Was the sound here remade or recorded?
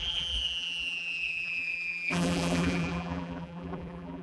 remade